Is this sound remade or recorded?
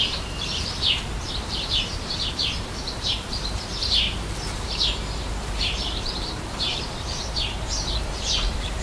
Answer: remade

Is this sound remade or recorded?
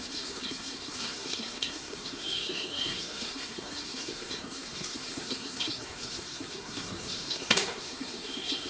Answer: remade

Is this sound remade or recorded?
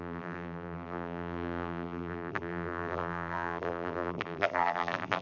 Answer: remade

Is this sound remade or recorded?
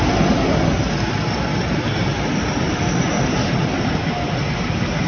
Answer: recorded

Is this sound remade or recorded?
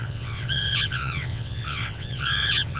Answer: remade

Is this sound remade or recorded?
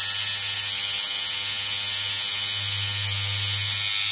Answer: recorded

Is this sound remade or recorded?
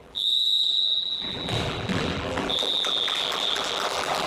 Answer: remade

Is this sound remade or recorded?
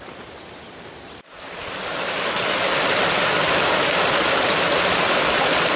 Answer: recorded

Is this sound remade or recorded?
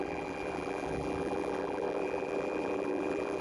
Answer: remade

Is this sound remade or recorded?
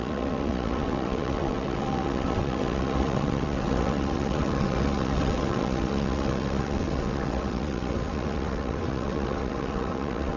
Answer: remade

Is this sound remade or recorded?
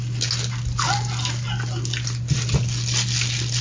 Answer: recorded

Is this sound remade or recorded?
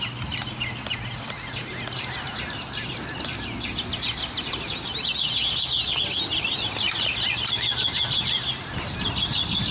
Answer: recorded